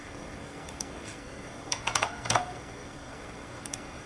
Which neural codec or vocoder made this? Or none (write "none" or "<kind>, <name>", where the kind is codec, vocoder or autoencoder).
codec, SNAC